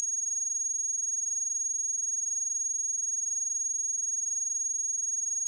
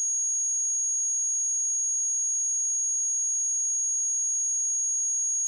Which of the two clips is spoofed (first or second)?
first